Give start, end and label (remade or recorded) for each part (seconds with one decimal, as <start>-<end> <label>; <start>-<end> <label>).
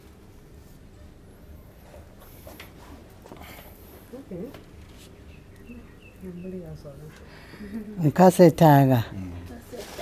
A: 0.0-3.0 recorded; 3.0-4.5 remade; 4.5-10.0 recorded